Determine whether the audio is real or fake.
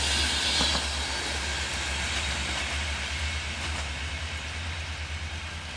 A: real